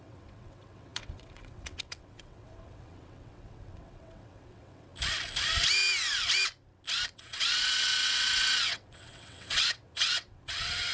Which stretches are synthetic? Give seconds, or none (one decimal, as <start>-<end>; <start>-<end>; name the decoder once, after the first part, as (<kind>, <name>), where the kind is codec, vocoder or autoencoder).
0.0-4.9 (vocoder, WaveNeXt); 7.1-10.9